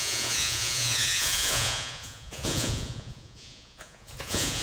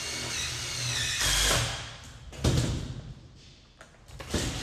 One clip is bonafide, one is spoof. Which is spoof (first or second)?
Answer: first